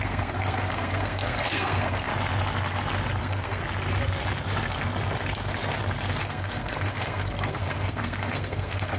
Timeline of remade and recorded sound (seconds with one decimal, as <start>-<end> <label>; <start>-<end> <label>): 0.0-2.1 remade; 2.1-3.2 recorded; 3.2-3.6 remade; 3.6-6.2 recorded; 6.2-9.0 remade